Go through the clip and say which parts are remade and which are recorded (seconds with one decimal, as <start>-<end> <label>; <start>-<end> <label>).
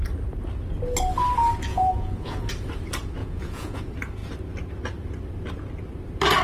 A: 0.0-1.7 recorded; 1.7-2.5 remade; 2.5-3.2 recorded; 3.2-3.8 remade; 3.8-6.4 recorded